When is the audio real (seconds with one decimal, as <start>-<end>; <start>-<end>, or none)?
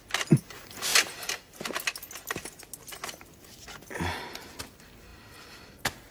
0.0-6.1